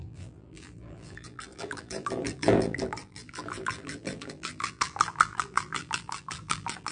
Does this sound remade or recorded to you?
remade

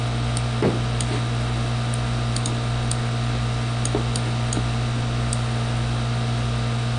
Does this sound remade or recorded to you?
recorded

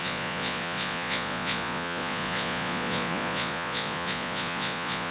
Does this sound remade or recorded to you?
remade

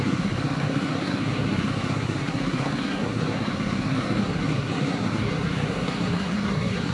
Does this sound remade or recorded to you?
remade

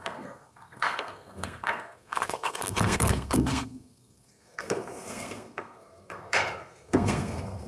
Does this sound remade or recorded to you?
remade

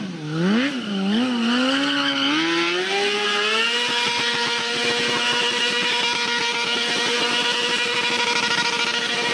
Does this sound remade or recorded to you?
recorded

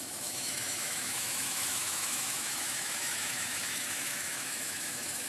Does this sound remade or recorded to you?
remade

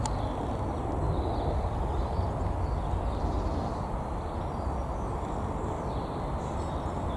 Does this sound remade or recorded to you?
recorded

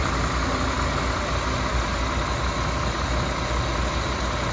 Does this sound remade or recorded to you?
recorded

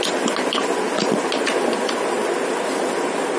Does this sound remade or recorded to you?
recorded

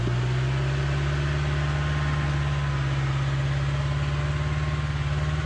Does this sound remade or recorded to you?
recorded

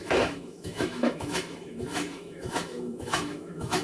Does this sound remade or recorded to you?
remade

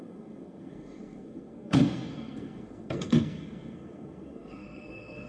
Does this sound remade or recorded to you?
remade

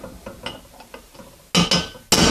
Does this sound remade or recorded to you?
recorded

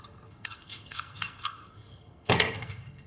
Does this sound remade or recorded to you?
remade